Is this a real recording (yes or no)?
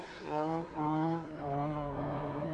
no